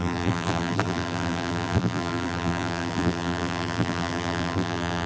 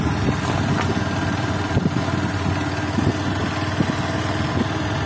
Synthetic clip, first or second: first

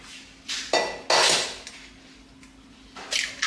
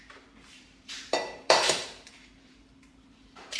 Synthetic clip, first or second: second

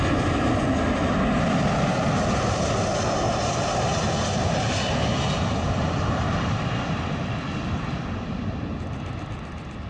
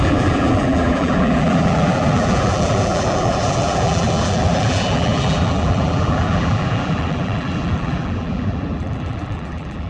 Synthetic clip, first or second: second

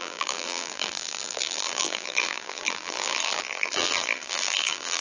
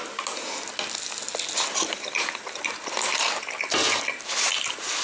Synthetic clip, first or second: first